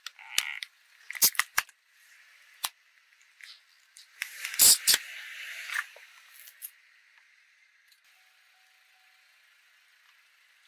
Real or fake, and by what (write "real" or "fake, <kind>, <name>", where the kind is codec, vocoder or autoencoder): real